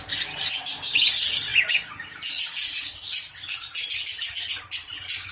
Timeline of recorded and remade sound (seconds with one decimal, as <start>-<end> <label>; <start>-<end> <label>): 0.0-5.3 recorded